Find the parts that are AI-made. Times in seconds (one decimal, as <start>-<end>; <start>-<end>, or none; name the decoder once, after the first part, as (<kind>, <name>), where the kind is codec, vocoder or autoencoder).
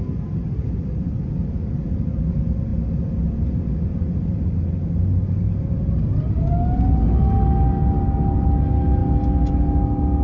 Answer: none